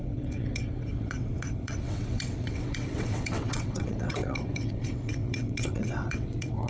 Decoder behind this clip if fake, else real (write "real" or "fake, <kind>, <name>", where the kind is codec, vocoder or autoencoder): fake, vocoder, WaveNeXt